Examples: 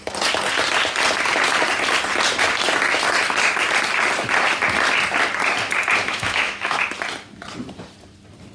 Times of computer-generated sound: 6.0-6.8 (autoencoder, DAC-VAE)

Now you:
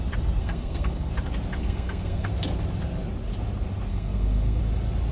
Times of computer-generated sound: 0.4-1.1 (codec, SNAC); 1.6-2.3; 3.9-4.6

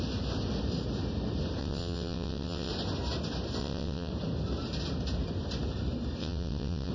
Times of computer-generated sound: 1.6-2.7 (vocoder, WaveNeXt); 3.6-4.1; 6.2-6.9

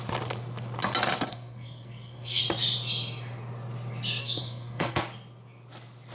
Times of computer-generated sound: 1.3-2.4 (codec, SNAC); 4.2-5.0

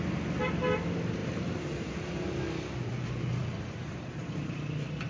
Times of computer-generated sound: none

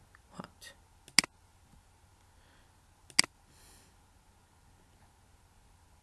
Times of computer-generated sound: none

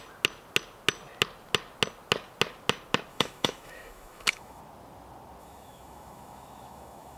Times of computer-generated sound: 3.1-4.6 (autoencoder, DAC-VAE); 5.4-7.2

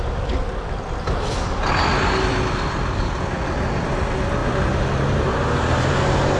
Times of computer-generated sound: none